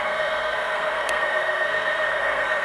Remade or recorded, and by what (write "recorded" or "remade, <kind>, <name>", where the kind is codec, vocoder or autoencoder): remade, codec, SNAC